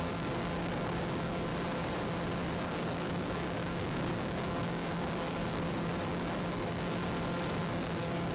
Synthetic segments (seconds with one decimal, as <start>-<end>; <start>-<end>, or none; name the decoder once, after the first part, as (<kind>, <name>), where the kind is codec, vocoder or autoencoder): 0.0-1.5 (codec, DAC); 2.6-5.9; 6.5-7.0; 7.6-8.3

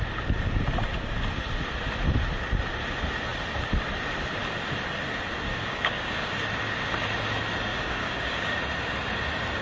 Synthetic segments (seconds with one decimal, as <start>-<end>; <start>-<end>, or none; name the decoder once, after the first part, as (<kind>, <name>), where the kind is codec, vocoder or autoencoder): 5.5-6.3 (codec, DAC); 7.7-8.6